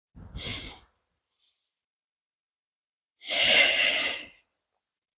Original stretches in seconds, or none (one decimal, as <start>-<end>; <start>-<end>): 0.0-0.5; 3.6-5.2